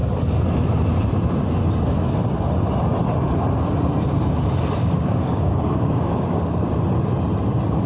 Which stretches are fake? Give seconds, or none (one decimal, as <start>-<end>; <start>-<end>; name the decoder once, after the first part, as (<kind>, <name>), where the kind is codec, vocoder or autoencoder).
4.8-6.7 (codec, DAC)